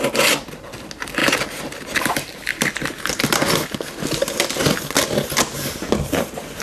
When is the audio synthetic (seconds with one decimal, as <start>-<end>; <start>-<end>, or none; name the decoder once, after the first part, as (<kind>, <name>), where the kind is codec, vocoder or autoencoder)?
none